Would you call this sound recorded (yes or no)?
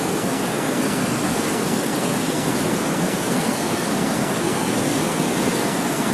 no